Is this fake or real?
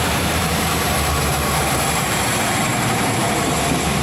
fake